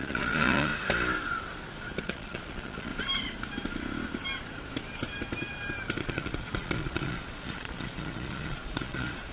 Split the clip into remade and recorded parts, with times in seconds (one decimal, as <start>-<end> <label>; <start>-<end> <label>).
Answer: 0.0-0.7 remade; 0.7-2.0 recorded; 2.0-2.9 remade; 2.9-6.0 recorded; 6.0-9.3 remade